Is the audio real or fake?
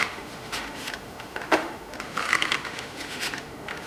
fake